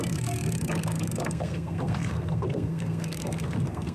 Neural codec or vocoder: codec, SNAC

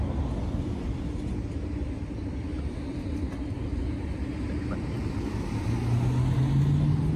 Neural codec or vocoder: none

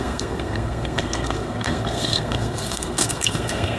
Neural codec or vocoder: codec, SNAC